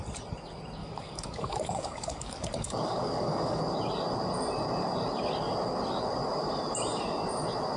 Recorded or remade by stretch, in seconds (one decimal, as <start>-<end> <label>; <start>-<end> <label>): 0.0-0.8 recorded; 0.8-3.6 remade; 3.6-7.8 recorded